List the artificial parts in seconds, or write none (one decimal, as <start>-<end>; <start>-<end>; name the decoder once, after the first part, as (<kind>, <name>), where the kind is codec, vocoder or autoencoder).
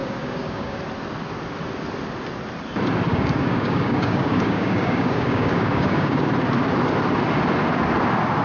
0.0-0.8 (codec, DAC); 3.1-6.3